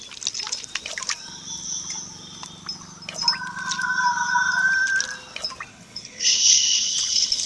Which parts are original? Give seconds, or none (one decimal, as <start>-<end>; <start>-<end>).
0.0-5.7

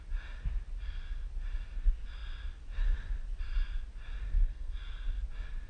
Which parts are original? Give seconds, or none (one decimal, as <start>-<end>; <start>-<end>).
0.0-4.3; 4.8-5.7

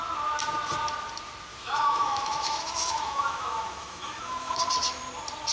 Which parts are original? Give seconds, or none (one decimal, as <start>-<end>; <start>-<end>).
0.0-1.5; 4.6-5.5

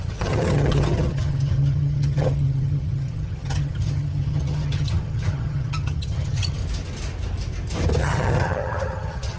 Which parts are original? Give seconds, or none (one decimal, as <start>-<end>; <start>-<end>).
6.6-8.0

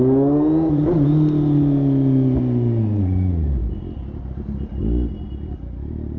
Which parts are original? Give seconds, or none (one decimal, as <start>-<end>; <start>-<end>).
0.0-6.2

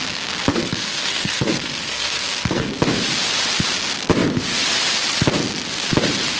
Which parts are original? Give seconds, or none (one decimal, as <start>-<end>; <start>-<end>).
0.0-0.5; 2.7-6.4

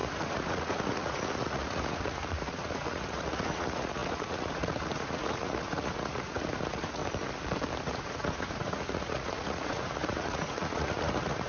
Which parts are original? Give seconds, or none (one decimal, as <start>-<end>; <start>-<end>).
7.0-7.8

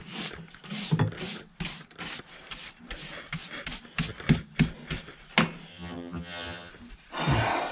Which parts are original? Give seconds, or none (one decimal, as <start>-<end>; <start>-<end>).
0.0-5.7; 6.7-7.7